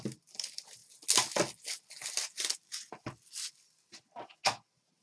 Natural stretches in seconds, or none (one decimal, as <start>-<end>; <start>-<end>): 0.0-5.0